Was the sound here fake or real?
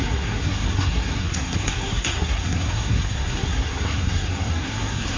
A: fake